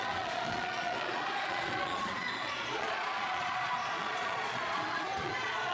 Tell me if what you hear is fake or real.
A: fake